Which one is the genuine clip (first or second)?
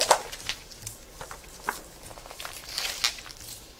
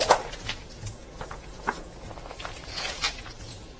first